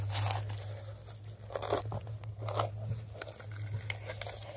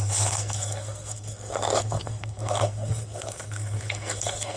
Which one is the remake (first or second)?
second